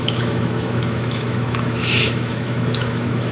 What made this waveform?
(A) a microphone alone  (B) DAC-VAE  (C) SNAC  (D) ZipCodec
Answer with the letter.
B